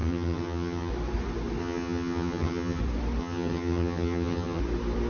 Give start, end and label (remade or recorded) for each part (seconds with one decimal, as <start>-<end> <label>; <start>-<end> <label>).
0.0-0.9 remade; 0.9-1.6 recorded; 1.6-2.8 remade; 2.8-3.2 recorded; 3.2-4.6 remade; 4.6-5.1 recorded